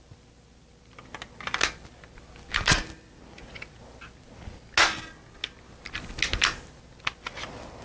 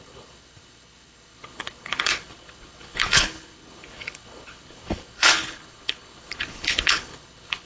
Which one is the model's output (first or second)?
second